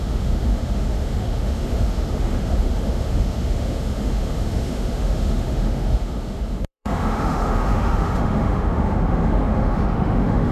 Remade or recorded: remade